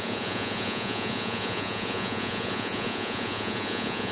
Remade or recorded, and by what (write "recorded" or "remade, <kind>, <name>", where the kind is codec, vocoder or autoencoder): remade, vocoder, Vocos